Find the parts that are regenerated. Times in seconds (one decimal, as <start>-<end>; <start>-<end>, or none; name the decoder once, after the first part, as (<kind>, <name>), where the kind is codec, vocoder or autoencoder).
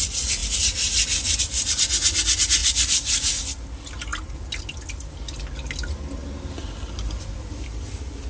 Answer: 2.6-3.3 (vocoder, BigVGAN v2)